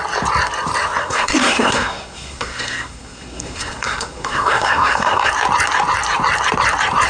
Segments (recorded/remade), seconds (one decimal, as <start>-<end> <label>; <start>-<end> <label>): 0.0-1.0 recorded; 1.0-5.3 remade; 5.3-7.1 recorded